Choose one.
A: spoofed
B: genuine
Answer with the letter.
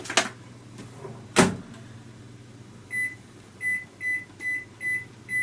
B